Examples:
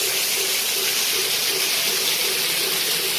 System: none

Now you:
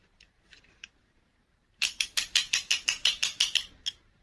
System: vocoder, BigVGAN v2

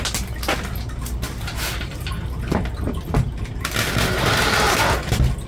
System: none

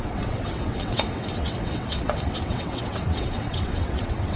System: vocoder, WaveNeXt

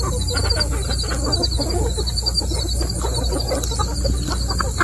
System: none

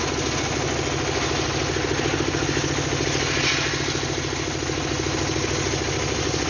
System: none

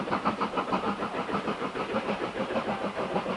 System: vocoder, BigVGAN v2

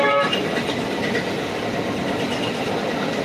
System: none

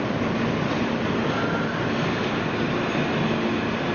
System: none